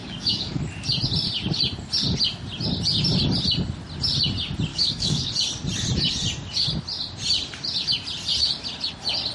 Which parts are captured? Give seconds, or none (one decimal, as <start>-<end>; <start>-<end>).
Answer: 0.6-4.7; 5.3-9.3

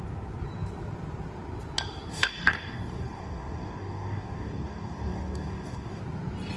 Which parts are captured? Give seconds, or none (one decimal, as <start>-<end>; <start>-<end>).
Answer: 0.0-2.1; 6.0-6.6

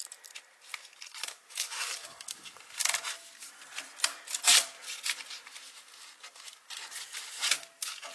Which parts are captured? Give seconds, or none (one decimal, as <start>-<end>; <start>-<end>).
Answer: 0.0-1.2; 2.5-8.1

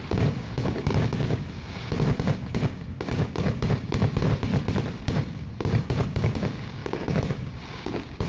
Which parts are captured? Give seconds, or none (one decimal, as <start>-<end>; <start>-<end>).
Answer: 4.5-5.0

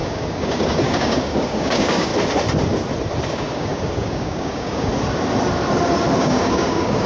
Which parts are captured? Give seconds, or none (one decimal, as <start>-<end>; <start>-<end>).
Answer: 2.1-3.3; 4.9-6.2

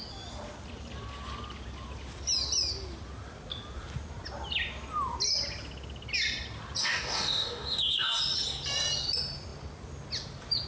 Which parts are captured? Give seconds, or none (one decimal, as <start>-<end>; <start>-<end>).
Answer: 0.0-6.8; 8.2-10.7